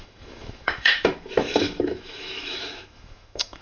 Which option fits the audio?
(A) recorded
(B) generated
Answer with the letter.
B